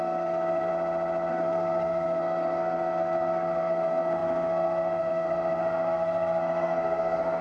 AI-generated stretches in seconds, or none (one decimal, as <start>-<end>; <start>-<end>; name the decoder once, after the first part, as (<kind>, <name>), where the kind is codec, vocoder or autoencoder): 0.0-0.7 (codec, SNAC); 1.3-7.4

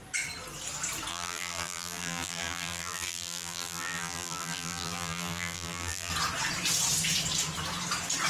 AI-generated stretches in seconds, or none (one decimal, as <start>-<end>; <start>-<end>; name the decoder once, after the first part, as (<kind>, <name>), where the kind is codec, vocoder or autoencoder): 1.1-6.1 (vocoder, BigVGAN v2)

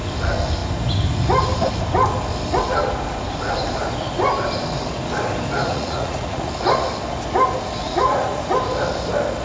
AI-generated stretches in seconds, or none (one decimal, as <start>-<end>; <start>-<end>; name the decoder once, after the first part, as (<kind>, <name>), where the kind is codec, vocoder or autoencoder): 5.7-6.5 (vocoder, Vocos); 7.8-8.4

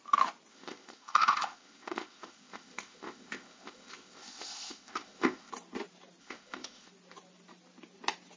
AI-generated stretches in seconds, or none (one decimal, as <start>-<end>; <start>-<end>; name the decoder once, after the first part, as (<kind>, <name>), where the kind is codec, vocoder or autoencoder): 0.5-5.5 (codec, ZipCodec); 6.2-6.9

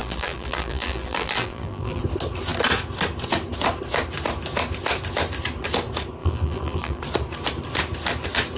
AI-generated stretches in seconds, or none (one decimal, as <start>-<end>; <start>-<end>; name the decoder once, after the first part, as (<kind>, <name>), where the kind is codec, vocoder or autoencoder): 0.0-2.0 (vocoder, BigVGAN v2); 6.2-7.0

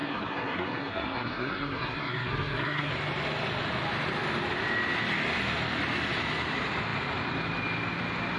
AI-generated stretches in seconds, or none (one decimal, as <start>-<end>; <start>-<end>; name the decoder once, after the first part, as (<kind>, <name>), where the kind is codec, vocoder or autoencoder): 0.0-2.9 (codec, SNAC)

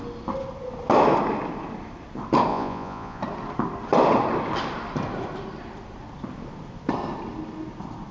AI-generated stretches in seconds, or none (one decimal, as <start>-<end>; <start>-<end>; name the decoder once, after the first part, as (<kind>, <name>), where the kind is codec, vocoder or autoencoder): 2.5-3.2 (vocoder, Vocos)